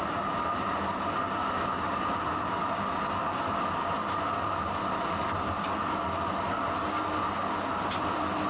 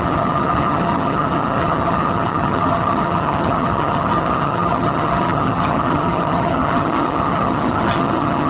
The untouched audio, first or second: first